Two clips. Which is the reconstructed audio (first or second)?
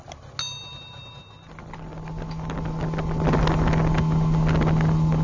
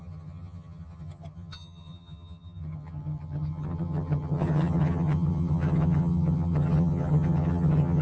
second